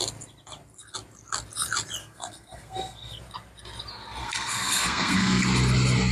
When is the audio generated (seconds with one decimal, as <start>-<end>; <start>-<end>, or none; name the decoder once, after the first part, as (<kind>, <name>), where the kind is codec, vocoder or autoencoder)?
2.0-3.2 (codec, SNAC); 4.2-5.4